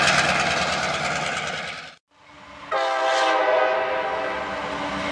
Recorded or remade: recorded